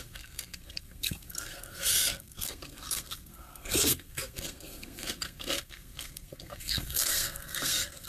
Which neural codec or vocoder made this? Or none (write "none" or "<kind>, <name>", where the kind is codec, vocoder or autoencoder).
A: codec, SNAC